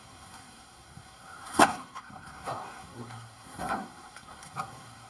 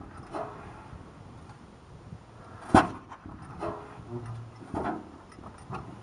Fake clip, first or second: first